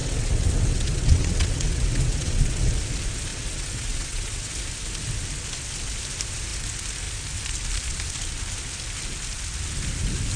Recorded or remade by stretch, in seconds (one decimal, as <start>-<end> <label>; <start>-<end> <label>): 0.0-2.7 remade; 2.7-3.3 recorded; 3.3-4.5 remade; 4.5-10.4 recorded